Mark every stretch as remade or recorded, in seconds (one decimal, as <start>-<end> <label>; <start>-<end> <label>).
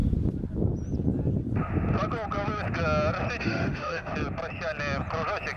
0.0-3.4 recorded; 3.4-4.1 remade; 4.1-5.6 recorded